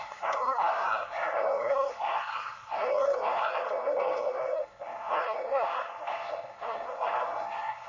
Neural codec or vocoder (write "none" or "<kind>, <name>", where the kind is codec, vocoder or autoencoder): codec, SNAC